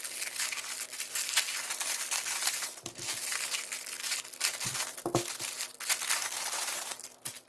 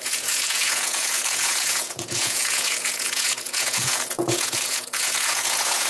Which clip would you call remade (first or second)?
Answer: second